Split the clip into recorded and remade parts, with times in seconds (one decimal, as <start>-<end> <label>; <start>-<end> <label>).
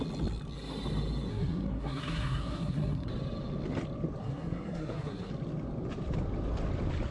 0.0-1.3 recorded; 1.3-3.1 remade; 3.1-4.2 recorded; 4.2-5.3 remade; 5.3-7.1 recorded